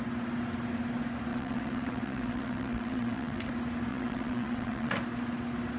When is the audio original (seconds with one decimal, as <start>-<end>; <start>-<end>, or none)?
0.0-1.3; 3.5-3.9; 4.9-5.8